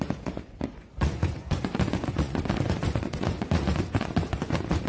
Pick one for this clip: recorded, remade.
remade